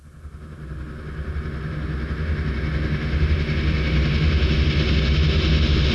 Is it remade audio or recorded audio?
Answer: recorded